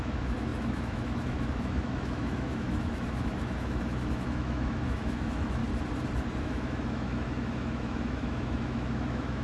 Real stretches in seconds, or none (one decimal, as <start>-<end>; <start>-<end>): 5.6-6.4